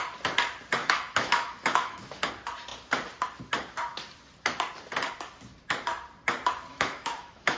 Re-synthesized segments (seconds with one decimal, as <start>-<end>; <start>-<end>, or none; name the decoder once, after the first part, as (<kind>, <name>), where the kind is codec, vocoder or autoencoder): 0.8-2.3 (autoencoder, DAC-VAE); 6.7-7.6